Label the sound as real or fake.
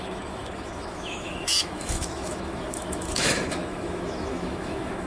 fake